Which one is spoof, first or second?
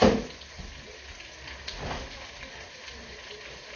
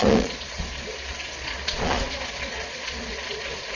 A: second